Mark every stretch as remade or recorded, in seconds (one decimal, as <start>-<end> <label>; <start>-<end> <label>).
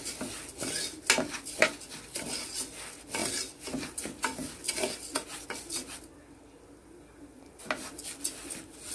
0.0-8.9 recorded